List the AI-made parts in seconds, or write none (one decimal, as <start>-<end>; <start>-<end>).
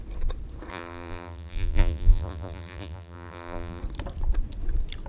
0.7-3.8